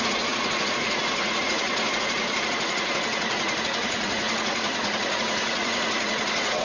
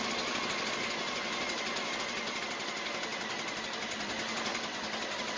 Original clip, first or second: second